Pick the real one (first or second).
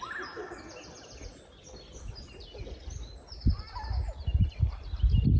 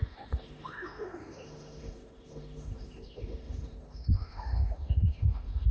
first